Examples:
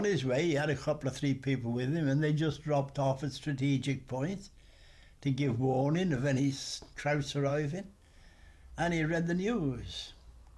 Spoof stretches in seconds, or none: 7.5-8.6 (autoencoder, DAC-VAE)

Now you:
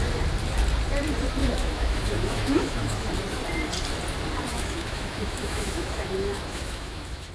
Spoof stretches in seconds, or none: 1.4-3.1 (autoencoder, DAC-VAE); 4.5-7.3